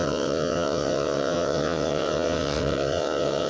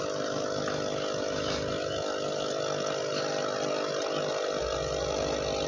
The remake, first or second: first